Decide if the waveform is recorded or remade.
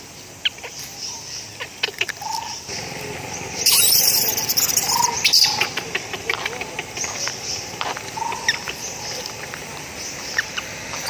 remade